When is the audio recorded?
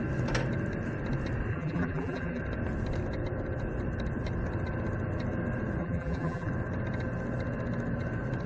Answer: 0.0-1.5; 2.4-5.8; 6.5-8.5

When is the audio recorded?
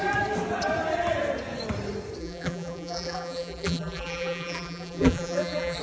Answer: 0.0-2.2